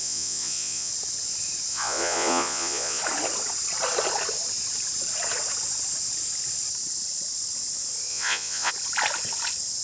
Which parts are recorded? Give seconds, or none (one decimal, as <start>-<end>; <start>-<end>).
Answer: 0.9-1.7; 3.0-8.1; 8.7-9.8

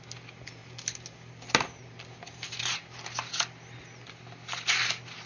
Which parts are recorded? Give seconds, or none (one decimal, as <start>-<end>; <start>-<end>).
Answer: 0.0-5.3

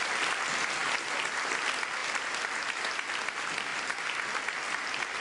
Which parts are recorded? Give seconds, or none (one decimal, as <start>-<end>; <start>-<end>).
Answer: 0.0-5.2

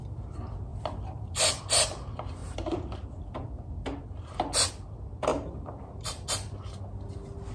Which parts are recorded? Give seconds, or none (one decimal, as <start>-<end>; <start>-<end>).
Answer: 0.0-0.7; 1.6-7.5

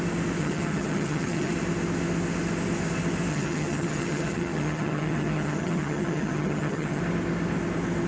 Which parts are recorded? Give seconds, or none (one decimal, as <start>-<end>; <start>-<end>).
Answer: 0.0-0.4; 1.5-3.3; 7.0-8.1

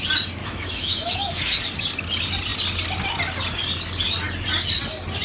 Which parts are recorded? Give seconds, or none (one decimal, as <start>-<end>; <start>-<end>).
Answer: 0.0-0.4; 1.6-5.2

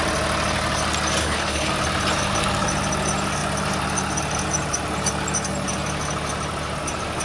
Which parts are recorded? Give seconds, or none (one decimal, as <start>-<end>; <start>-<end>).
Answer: 0.0-1.2; 1.7-7.2

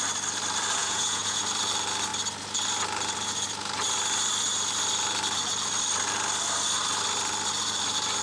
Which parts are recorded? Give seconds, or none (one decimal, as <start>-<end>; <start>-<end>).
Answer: 0.0-0.8; 1.4-8.2